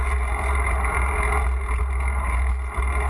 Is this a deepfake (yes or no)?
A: no